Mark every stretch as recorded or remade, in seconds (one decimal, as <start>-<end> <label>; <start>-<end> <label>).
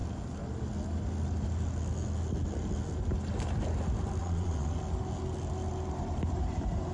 0.0-4.2 recorded; 4.2-4.7 remade; 4.7-6.9 recorded